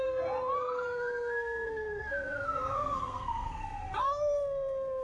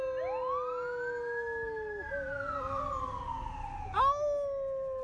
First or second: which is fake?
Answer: first